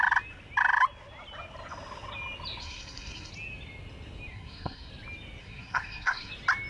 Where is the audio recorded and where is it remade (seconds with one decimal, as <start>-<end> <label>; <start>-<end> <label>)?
0.0-2.6 recorded; 2.6-3.3 remade; 3.3-4.3 recorded; 4.3-4.9 remade; 4.9-5.4 recorded; 5.4-6.3 remade; 6.3-6.7 recorded